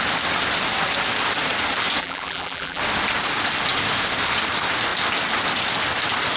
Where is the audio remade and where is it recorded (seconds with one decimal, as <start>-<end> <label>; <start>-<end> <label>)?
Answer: 0.0-2.0 recorded; 2.0-2.8 remade; 2.8-6.4 recorded